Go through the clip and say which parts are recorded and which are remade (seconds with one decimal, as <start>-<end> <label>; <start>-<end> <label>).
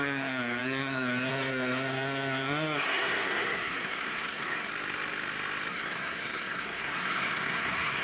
0.0-4.7 remade; 4.7-5.7 recorded; 5.7-8.0 remade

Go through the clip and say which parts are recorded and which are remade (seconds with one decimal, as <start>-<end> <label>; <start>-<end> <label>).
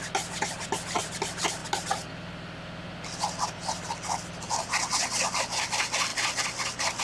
0.0-7.0 recorded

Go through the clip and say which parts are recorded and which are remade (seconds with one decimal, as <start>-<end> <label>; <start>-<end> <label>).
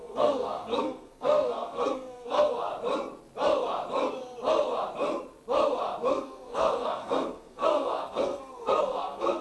0.0-2.7 remade; 2.7-6.1 recorded; 6.1-9.4 remade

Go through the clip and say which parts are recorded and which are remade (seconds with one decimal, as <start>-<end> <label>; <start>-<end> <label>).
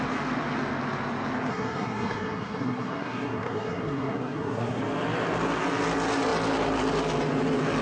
0.0-1.5 recorded; 1.5-4.8 remade; 4.8-7.8 recorded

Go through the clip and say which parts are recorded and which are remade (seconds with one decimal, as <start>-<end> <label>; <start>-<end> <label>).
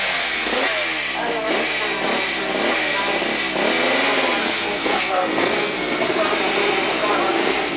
0.0-0.6 remade; 0.6-4.4 recorded; 4.4-6.3 remade; 6.3-7.3 recorded; 7.3-7.8 remade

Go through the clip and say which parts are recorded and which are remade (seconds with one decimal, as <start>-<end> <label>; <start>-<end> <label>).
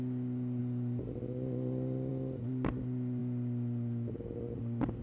0.0-5.0 recorded